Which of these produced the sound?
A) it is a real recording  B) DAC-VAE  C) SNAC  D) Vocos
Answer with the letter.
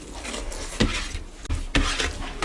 A